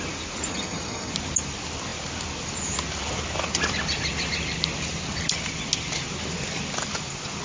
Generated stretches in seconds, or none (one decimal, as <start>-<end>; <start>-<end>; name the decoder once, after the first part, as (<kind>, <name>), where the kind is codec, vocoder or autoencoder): 0.5-1.1 (vocoder, HiFi-GAN)